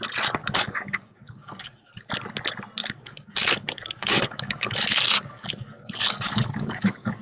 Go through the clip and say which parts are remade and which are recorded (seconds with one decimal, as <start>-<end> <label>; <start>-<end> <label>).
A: 0.0-0.4 recorded; 0.4-1.9 remade; 1.9-2.8 recorded; 2.8-7.2 remade